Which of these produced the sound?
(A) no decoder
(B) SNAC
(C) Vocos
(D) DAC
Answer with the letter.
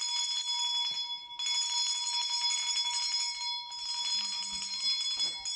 A